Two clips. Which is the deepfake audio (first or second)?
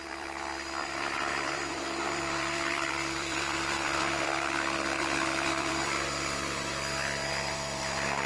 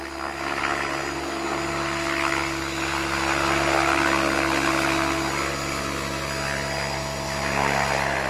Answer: first